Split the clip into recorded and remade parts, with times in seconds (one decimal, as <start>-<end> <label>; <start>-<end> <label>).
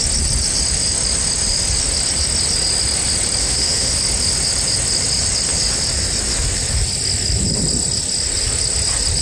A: 0.0-3.4 recorded; 3.4-3.9 remade; 3.9-9.2 recorded